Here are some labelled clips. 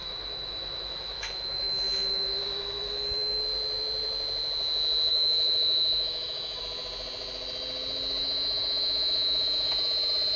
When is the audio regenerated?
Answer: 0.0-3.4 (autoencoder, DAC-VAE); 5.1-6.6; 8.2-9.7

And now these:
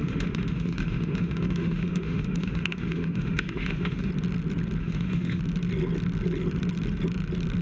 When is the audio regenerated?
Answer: 0.0-4.1 (autoencoder, DAC-VAE); 4.8-5.4

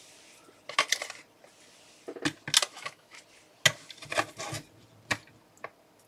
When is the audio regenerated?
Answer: 2.7-3.2 (autoencoder, DAC-VAE)

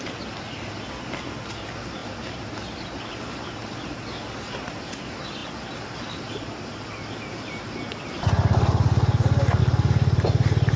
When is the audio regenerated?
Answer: none

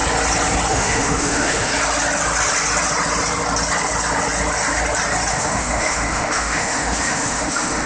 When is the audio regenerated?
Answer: 0.7-1.7 (autoencoder, DAC-VAE); 5.3-7.9

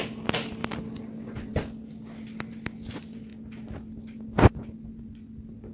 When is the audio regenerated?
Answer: none

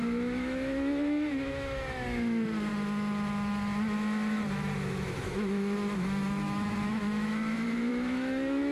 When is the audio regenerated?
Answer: 0.0-2.7 (autoencoder, DAC-VAE); 4.5-8.7

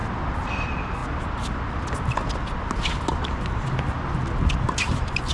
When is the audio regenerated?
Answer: none